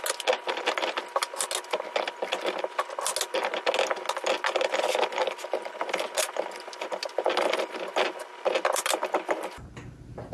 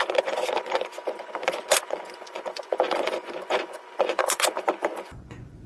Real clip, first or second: first